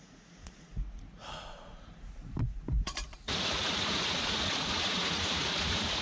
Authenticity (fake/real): fake